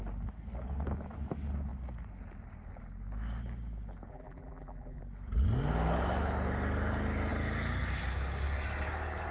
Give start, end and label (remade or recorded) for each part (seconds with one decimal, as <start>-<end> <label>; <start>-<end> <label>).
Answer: 0.0-4.1 recorded; 4.1-5.0 remade; 5.0-9.3 recorded